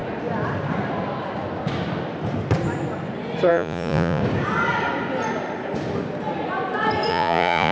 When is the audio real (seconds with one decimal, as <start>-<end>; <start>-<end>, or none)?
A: 0.0-3.5; 4.2-7.1